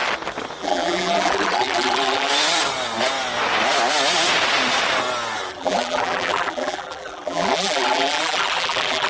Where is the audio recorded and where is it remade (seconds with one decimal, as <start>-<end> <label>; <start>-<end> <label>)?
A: 0.0-0.6 recorded; 0.6-2.3 remade; 2.3-5.5 recorded; 5.5-9.1 remade